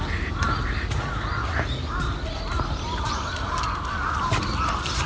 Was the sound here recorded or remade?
recorded